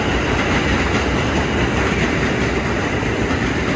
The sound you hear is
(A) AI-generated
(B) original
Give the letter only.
B